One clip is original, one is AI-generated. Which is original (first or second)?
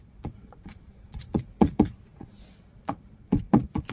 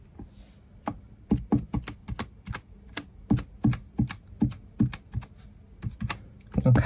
second